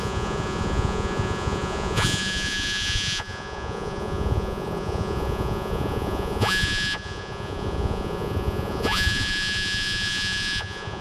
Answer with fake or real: fake